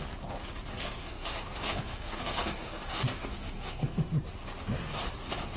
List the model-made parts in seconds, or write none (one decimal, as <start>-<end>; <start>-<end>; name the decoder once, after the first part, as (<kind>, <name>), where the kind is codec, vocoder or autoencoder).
0.7-4.1 (codec, SNAC)